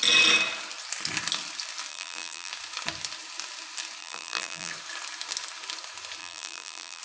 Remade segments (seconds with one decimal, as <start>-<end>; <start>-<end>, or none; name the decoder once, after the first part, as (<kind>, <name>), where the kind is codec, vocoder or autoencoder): 1.9-2.5 (vocoder, BigVGAN v2); 4.0-4.7; 6.2-7.0